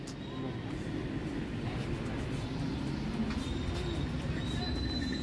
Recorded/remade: recorded